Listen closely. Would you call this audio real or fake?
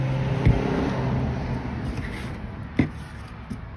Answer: real